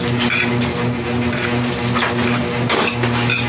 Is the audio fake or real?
real